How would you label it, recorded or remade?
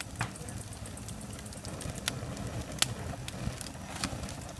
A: recorded